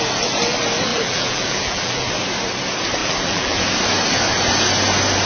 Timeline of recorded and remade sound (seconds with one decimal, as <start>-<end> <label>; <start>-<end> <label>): 0.0-0.9 recorded; 0.9-2.1 remade; 2.1-3.0 recorded; 3.0-3.6 remade; 3.6-5.3 recorded